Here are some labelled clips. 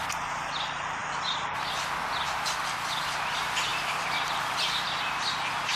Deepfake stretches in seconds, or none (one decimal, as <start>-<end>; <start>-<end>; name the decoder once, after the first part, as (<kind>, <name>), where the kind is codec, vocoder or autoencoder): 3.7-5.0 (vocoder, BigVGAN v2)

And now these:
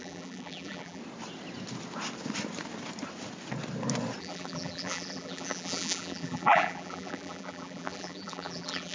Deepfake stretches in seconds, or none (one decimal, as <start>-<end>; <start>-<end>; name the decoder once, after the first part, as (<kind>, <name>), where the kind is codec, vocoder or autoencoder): 0.0-1.0 (vocoder, BigVGAN v2); 4.2-8.9

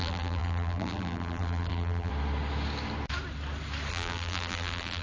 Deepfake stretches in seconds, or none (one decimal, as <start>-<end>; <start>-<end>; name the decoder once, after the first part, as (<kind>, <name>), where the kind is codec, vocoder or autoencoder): 0.0-2.1 (vocoder, BigVGAN v2); 3.9-5.0

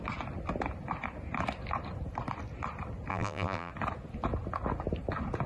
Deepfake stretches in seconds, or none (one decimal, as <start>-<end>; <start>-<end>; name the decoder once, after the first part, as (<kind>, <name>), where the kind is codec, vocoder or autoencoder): 3.1-3.7 (vocoder, BigVGAN v2)